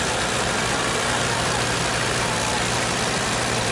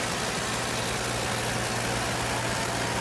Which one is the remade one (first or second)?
first